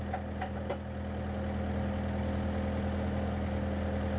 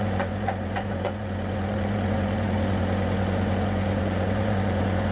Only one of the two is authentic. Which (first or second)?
first